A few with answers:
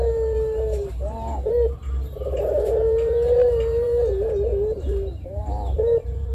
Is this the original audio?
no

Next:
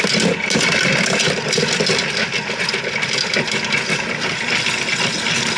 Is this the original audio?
yes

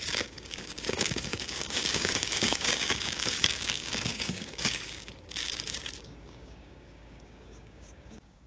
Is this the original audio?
no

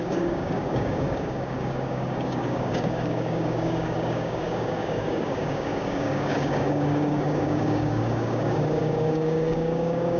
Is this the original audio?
no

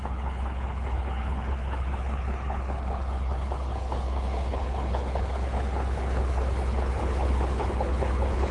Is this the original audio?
no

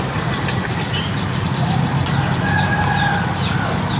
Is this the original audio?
yes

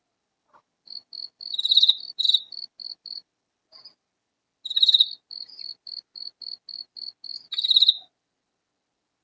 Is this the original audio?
yes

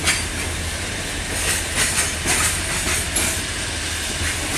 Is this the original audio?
yes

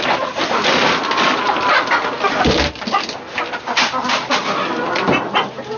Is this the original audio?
yes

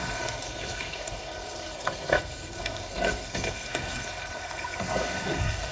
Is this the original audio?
no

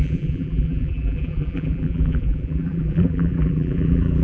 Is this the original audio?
no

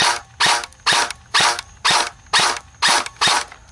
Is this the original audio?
yes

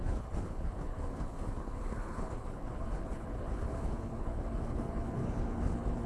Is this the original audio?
no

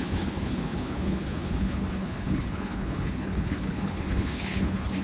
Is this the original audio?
no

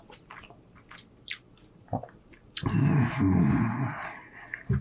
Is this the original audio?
yes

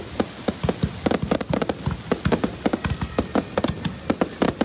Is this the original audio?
yes